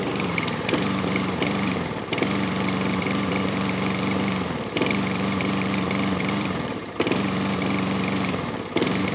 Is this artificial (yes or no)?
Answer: yes